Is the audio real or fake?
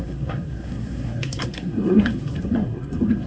fake